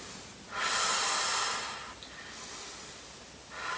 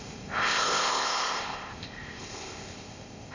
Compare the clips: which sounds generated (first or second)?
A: second